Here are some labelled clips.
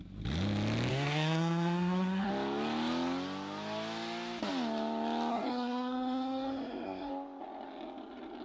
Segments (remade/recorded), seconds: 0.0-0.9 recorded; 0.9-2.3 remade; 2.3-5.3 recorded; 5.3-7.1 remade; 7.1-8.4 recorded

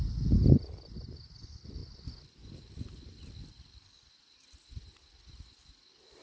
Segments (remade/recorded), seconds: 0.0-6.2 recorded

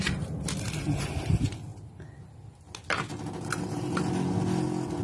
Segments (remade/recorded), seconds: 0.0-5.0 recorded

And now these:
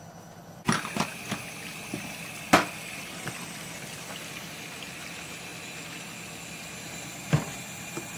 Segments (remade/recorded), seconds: 0.0-8.2 recorded

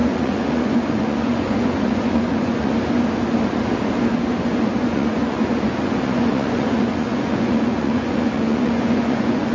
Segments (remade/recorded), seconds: 0.0-2.7 remade; 2.7-4.8 recorded; 4.8-9.5 remade